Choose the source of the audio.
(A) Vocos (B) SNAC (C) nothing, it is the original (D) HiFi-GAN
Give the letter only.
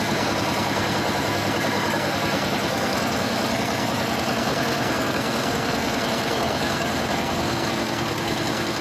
B